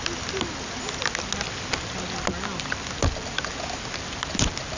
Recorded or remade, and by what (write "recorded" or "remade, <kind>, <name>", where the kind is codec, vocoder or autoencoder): recorded